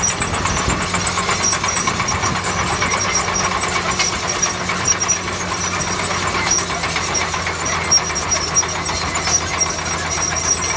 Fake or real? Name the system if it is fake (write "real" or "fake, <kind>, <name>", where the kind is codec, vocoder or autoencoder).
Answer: real